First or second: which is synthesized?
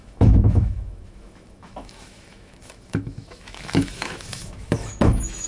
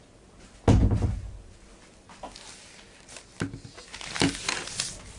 first